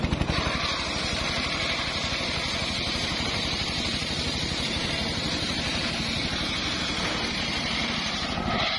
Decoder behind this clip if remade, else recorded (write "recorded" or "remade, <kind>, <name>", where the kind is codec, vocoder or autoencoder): remade, vocoder, BigVGAN v2